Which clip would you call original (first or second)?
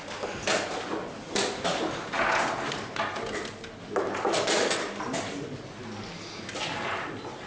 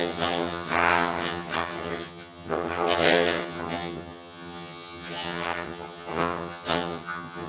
first